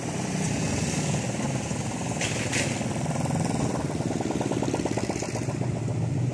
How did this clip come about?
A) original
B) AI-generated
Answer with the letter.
A